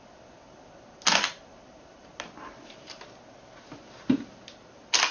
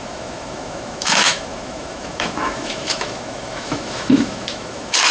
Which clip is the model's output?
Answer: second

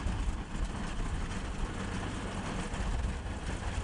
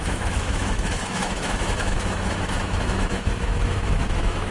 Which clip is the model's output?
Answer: second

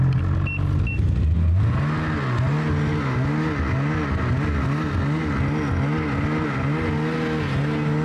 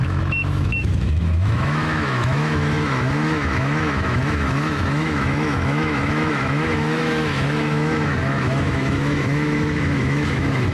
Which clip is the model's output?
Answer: second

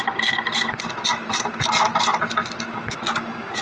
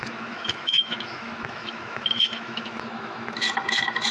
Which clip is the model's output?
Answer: second